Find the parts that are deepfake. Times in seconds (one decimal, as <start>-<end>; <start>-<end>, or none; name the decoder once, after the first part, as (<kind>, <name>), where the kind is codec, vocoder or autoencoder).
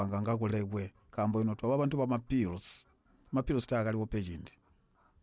none